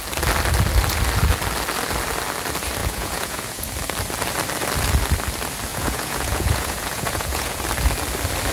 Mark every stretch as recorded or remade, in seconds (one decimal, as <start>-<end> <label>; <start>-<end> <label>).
0.0-2.8 recorded; 2.8-3.7 remade; 3.7-5.7 recorded; 5.7-7.6 remade; 7.6-8.5 recorded